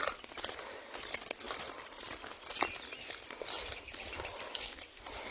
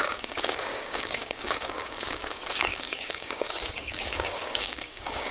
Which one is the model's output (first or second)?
second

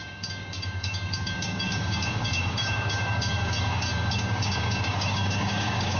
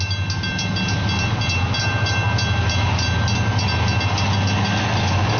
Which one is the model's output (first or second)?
first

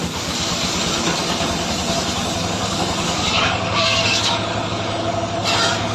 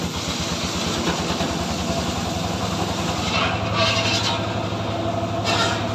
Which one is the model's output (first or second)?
first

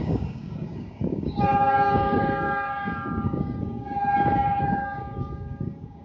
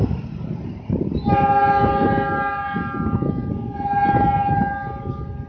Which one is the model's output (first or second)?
first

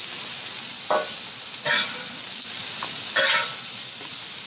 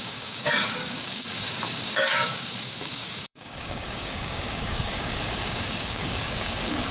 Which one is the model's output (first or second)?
second